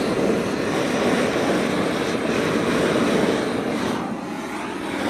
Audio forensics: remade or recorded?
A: recorded